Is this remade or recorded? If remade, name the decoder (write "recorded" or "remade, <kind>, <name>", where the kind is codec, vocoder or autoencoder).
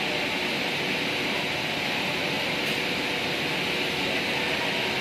recorded